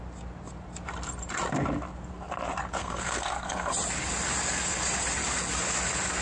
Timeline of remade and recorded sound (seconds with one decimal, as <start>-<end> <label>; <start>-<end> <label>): 0.0-2.8 recorded; 2.8-3.7 remade; 3.7-6.2 recorded